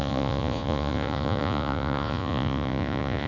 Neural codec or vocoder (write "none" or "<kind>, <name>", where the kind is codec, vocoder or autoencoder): vocoder, Vocos